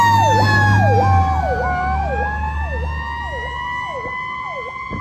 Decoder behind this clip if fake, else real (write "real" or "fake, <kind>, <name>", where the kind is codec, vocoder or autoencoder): real